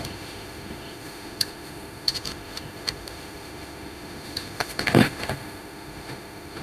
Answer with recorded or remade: remade